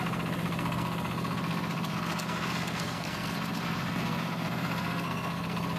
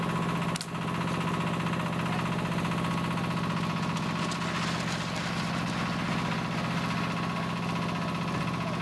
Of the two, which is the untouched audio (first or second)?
second